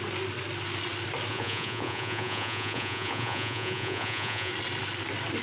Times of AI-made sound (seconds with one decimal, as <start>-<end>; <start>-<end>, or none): 1.3-4.5